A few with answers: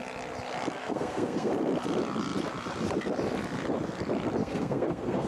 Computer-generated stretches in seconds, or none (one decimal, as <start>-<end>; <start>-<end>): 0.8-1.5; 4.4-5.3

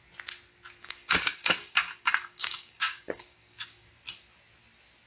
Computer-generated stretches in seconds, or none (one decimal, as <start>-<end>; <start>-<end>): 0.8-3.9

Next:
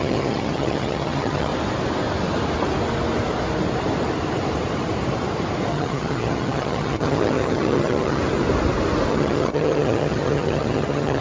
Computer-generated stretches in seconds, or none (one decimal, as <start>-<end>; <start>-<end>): 0.0-1.5; 5.7-8.2; 9.1-11.2

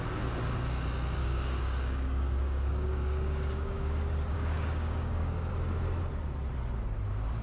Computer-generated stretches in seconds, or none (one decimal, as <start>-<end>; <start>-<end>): 1.2-5.5

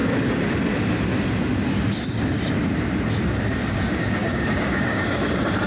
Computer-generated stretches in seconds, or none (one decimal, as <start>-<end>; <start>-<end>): 4.2-5.3

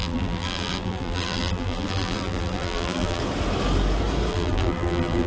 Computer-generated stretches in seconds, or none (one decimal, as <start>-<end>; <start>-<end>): 0.0-3.2; 4.3-5.3

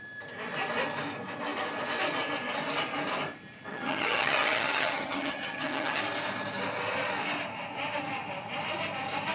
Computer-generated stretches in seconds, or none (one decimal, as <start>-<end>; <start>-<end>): 3.7-6.0

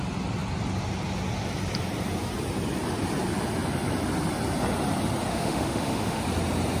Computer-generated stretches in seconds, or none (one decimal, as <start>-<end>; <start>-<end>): 5.3-6.2